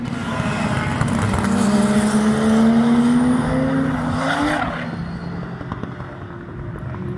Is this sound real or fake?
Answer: real